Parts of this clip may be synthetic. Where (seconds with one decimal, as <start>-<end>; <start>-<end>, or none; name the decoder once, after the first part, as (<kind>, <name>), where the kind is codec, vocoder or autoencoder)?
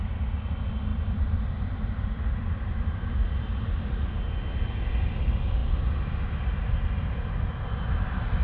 0.9-4.0 (vocoder, BigVGAN v2)